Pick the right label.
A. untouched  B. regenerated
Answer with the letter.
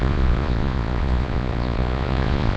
B